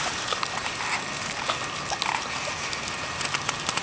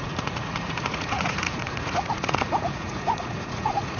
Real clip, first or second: first